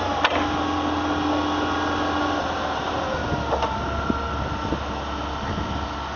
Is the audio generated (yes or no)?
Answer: no